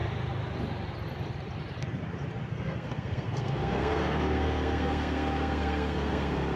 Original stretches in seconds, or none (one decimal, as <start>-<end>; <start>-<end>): 0.0-2.5